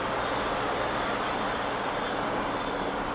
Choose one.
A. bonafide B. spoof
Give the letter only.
B